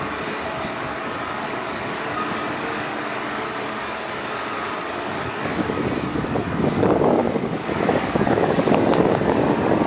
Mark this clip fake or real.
fake